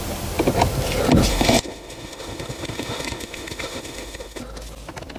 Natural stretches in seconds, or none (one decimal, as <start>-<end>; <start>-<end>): 0.0-1.3; 4.4-5.2